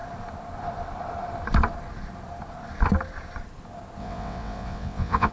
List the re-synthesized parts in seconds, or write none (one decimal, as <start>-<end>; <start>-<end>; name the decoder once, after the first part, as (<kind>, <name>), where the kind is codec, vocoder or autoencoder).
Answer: 4.0-5.3 (vocoder, WaveNeXt)